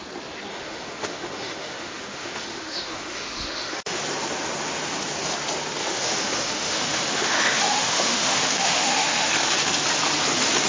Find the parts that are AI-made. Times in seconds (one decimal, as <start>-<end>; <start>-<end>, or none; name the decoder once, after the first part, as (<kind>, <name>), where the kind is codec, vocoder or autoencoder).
0.5-4.0 (autoencoder, DAC-VAE); 5.8-9.3